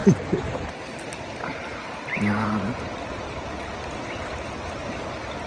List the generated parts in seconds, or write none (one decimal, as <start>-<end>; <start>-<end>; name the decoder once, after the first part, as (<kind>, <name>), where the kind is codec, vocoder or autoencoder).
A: 0.0-0.8 (vocoder, BigVGAN v2); 1.5-3.1